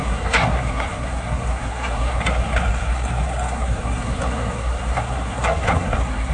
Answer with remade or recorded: remade